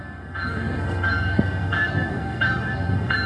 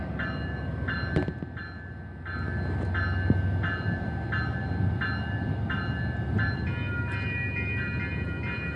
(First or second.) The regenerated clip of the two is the first